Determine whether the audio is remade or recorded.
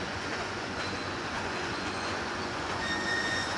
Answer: remade